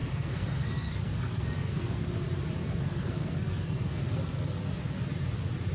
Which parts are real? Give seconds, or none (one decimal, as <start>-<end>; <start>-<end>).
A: 2.1-2.6; 4.6-5.7